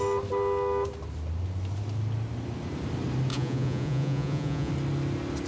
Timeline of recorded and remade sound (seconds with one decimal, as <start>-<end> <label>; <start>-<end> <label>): 0.0-3.3 recorded; 3.3-4.7 remade; 4.7-5.5 recorded